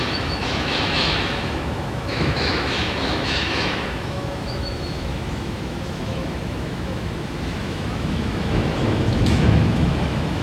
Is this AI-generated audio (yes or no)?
yes